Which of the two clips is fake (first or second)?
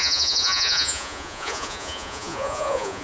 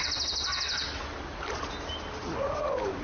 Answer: first